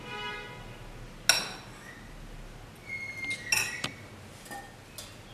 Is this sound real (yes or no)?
yes